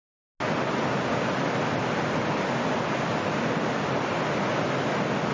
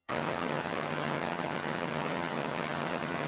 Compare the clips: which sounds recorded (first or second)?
first